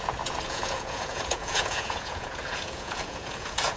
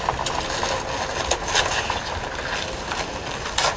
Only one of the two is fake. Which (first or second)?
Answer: first